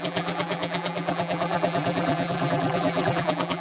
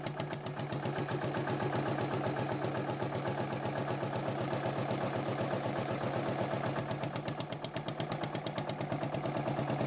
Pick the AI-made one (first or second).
first